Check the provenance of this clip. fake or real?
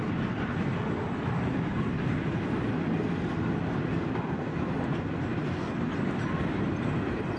real